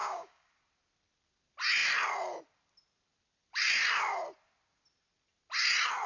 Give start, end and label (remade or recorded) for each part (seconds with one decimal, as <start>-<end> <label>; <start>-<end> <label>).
0.0-0.5 remade; 0.5-6.1 recorded